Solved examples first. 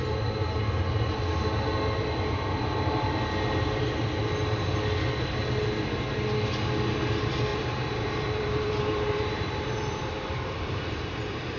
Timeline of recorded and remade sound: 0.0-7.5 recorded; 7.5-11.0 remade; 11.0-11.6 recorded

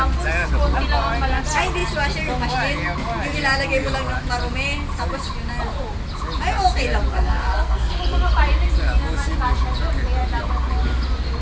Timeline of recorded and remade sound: 0.0-7.1 recorded; 7.1-8.0 remade; 8.0-11.4 recorded

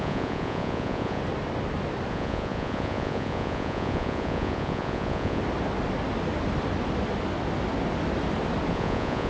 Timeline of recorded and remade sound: 0.0-1.2 remade; 1.2-2.1 recorded; 2.1-5.4 remade; 5.4-8.7 recorded; 8.7-9.3 remade

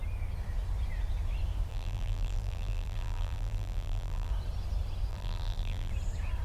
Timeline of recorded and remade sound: 0.0-1.7 recorded; 1.7-4.3 remade; 4.3-5.1 recorded; 5.1-5.9 remade; 5.9-6.4 recorded

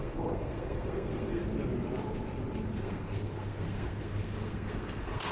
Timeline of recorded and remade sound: 0.0-1.4 remade; 1.4-2.8 recorded; 2.8-5.3 remade

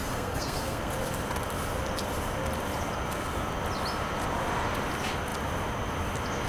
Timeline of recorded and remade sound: 0.0-0.9 remade; 0.9-6.5 recorded

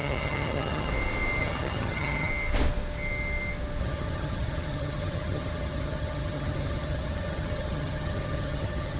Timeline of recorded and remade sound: 0.0-0.9 remade; 0.9-1.4 recorded; 1.4-2.3 remade; 2.3-3.8 recorded; 3.8-9.0 remade